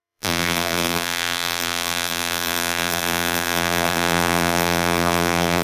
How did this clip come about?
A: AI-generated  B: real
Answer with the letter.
A